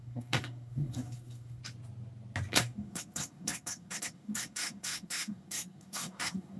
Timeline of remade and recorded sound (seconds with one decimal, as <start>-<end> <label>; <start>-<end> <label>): 0.0-1.6 remade; 1.6-2.5 recorded; 2.5-6.6 remade